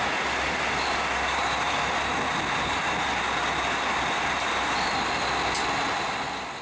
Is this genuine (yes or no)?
yes